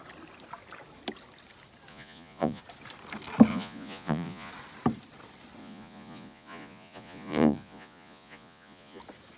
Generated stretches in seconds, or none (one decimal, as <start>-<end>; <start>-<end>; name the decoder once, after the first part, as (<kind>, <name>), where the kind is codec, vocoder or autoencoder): 1.9-2.6 (vocoder, Vocos); 3.5-4.5; 5.6-9.0

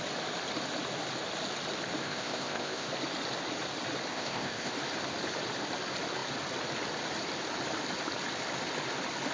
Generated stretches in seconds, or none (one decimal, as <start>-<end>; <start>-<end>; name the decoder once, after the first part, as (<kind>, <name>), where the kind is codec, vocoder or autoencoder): 2.0-2.9 (codec, ZipCodec); 4.1-4.7

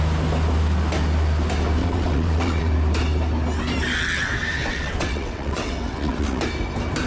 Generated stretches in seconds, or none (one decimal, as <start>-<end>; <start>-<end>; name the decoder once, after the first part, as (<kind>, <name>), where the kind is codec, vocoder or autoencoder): 1.8-2.7 (vocoder, WaveNeXt); 4.6-6.4

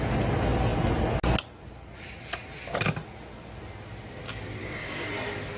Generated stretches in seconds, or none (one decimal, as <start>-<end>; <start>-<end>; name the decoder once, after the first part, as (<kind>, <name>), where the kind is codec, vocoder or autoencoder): 4.6-5.1 (codec, DAC)

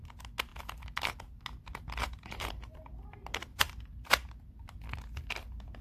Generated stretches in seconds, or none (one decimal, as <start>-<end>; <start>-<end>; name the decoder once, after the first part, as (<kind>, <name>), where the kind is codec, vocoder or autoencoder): 2.0-2.9 (vocoder, BigVGAN v2); 3.5-4.8

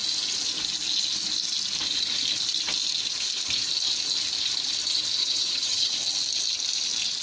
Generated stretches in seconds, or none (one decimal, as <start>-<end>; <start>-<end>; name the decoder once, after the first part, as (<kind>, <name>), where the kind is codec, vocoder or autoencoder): 5.2-5.9 (vocoder, HiFi-GAN)